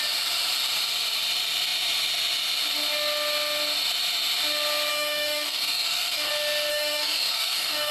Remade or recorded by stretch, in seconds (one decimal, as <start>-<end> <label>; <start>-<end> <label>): 0.0-4.9 recorded; 4.9-6.3 remade; 6.3-6.7 recorded; 6.7-7.9 remade